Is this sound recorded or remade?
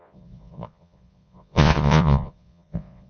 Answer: remade